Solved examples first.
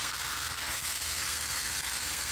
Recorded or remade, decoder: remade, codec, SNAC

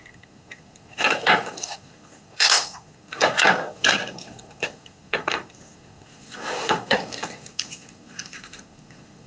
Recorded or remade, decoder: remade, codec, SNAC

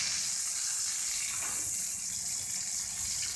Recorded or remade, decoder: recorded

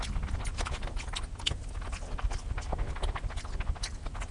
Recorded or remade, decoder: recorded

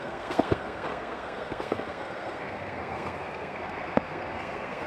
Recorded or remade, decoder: remade, codec, SNAC